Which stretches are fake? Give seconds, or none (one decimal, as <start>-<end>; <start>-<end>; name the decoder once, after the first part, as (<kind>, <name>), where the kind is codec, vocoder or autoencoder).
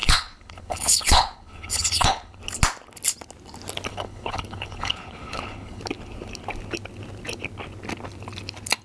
0.0-2.4 (codec, HILCodec); 3.9-5.8